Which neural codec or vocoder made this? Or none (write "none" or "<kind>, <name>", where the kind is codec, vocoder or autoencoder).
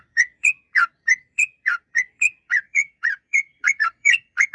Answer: vocoder, Vocos